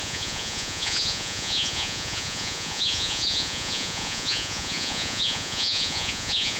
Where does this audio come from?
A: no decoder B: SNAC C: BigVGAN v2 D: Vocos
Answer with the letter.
D